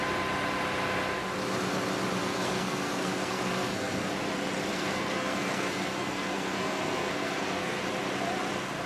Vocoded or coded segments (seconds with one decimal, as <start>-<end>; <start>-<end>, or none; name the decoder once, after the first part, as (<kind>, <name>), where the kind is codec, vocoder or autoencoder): 2.2-4.1 (codec, SNAC); 4.7-7.8